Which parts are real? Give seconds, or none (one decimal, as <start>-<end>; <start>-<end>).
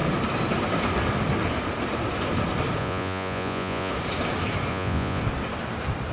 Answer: 0.0-2.8; 3.9-4.7; 5.2-6.1